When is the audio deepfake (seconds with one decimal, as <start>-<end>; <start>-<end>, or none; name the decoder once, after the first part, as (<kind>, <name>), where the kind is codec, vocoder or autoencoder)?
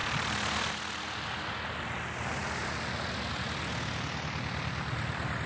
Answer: none